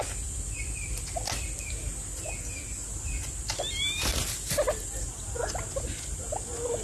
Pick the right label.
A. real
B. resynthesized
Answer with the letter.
A